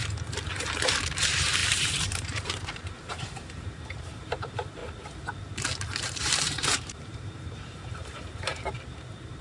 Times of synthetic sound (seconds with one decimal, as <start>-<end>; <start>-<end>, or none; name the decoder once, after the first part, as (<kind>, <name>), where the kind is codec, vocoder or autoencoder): 1.1-4.8 (vocoder, BigVGAN v2); 6.1-9.4